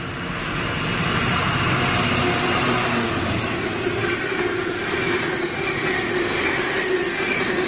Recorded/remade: recorded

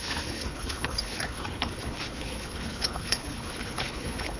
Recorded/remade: remade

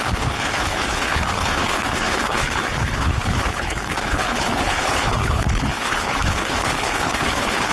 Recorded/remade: remade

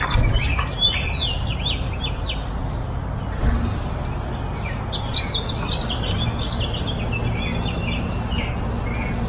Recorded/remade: recorded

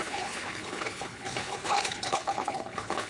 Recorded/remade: remade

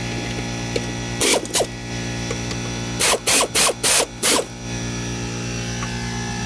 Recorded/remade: recorded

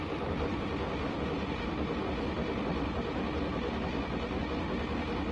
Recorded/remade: recorded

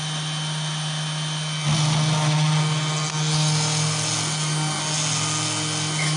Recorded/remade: recorded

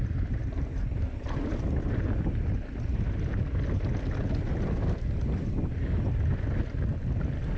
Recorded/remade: recorded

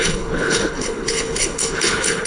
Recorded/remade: remade